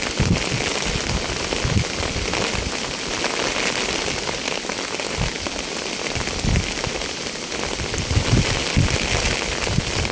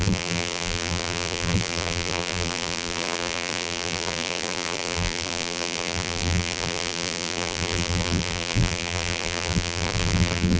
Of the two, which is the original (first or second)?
first